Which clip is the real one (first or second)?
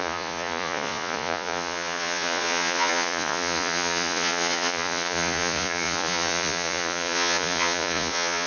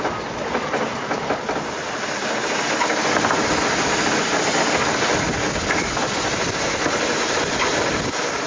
second